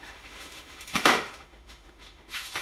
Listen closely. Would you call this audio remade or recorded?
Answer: remade